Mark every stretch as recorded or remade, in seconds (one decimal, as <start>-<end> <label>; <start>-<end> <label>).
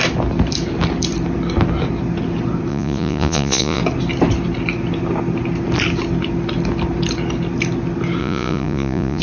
0.0-2.7 recorded; 2.7-3.8 remade; 3.8-8.2 recorded; 8.2-9.2 remade